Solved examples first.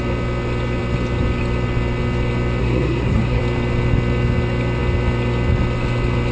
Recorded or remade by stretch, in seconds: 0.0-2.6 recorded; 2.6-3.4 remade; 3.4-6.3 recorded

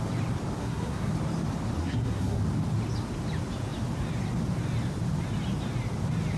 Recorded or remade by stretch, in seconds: 0.0-0.6 recorded; 0.6-1.1 remade; 1.1-1.8 recorded; 1.8-2.4 remade; 2.4-6.4 recorded